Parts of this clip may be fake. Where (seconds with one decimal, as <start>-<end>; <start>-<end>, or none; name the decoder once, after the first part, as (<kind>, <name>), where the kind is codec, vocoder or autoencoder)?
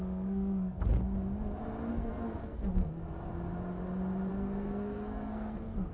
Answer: 0.0-0.8 (codec, SNAC); 1.9-3.0; 4.3-5.9